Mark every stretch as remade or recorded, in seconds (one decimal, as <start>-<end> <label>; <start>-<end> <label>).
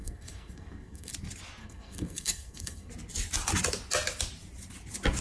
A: 0.0-1.1 remade; 1.1-1.6 recorded; 1.6-2.9 remade; 2.9-5.2 recorded